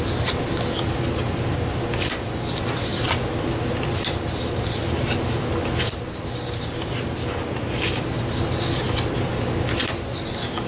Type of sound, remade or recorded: recorded